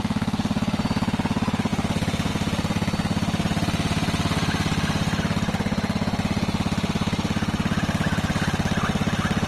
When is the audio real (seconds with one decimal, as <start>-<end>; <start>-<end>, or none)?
0.0-9.5